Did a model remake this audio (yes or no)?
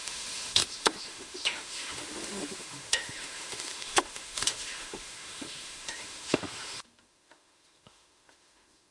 yes